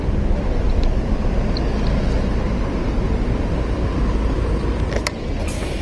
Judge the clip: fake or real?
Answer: real